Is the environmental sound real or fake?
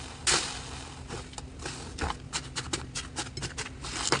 real